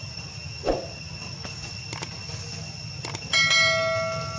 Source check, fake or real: real